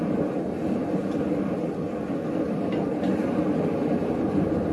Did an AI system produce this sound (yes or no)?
no